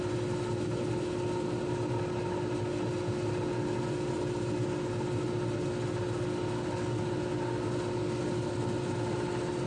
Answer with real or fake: real